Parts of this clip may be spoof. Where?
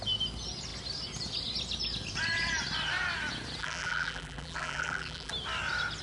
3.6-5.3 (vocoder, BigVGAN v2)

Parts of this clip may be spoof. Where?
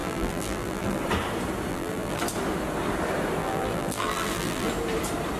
0.0-1.0 (vocoder, BigVGAN v2); 1.7-2.2; 3.4-4.7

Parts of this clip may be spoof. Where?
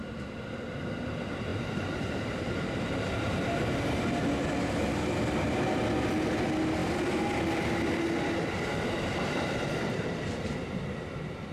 none